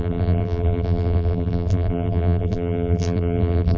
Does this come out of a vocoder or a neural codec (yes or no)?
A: yes